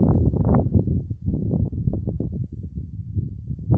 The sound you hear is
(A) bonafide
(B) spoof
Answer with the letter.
B